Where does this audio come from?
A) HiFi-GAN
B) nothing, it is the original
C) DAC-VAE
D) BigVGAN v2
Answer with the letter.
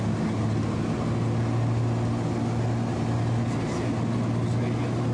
B